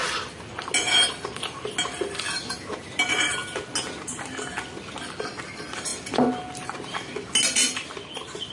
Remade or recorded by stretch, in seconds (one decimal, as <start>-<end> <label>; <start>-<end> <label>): 0.0-8.5 recorded